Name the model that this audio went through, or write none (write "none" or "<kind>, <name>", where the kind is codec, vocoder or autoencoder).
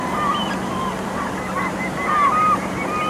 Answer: none